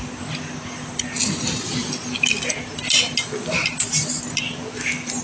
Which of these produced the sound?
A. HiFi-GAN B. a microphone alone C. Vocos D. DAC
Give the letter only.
B